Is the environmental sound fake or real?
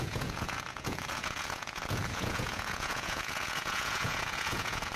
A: fake